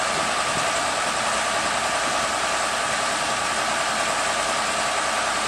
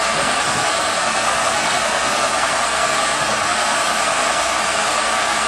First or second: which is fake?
second